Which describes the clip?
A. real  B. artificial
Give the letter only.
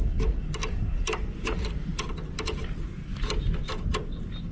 A